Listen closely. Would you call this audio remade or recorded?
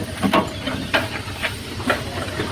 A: remade